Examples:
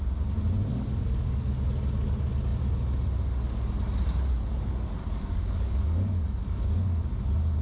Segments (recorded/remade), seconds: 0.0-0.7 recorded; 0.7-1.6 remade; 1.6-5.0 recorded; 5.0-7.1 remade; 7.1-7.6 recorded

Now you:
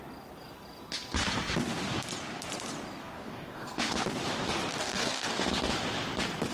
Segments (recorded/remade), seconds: 0.0-3.0 recorded; 3.0-3.9 remade; 3.9-4.8 recorded; 4.8-5.5 remade; 5.5-6.5 recorded

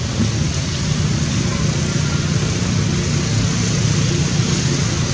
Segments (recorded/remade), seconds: 0.0-5.1 recorded

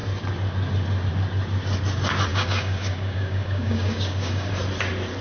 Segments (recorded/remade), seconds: 0.0-2.3 recorded; 2.3-4.5 remade; 4.5-5.2 recorded

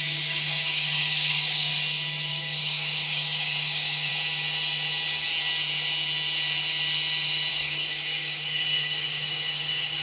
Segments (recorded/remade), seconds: 0.0-1.7 remade; 1.7-2.3 recorded; 2.3-4.1 remade; 4.1-7.5 recorded; 7.5-10.0 remade

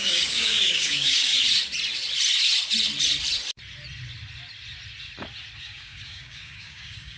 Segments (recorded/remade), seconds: 0.0-1.3 remade; 1.3-5.6 recorded; 5.6-7.2 remade

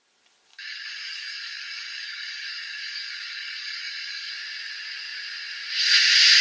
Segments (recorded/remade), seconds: 0.0-0.5 recorded; 0.5-4.3 remade; 4.3-6.4 recorded